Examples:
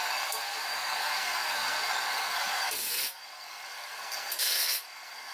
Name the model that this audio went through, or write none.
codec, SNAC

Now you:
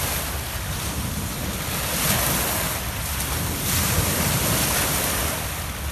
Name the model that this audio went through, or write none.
none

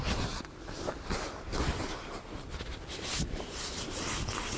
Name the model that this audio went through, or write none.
none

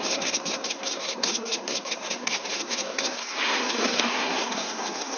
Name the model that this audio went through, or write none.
codec, SNAC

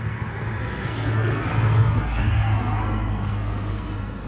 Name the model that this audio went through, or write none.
codec, SNAC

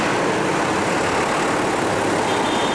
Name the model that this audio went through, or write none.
none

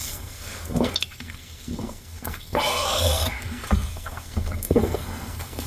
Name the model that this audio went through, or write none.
codec, SNAC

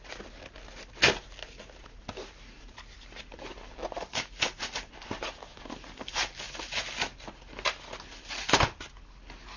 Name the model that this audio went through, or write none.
none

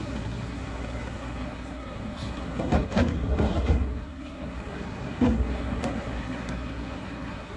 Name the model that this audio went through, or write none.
codec, SNAC